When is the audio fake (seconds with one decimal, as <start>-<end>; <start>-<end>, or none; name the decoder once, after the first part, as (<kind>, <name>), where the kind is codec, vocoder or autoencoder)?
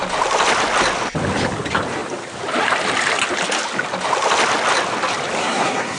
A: 5.4-6.0 (codec, SNAC)